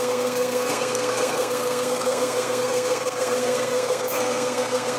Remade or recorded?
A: remade